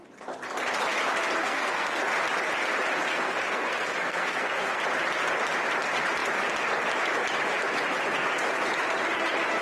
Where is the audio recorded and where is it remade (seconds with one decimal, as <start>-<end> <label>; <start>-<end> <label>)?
0.0-1.4 recorded; 1.4-2.0 remade; 2.0-3.1 recorded; 3.1-4.8 remade; 4.8-9.6 recorded